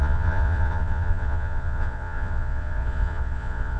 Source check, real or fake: fake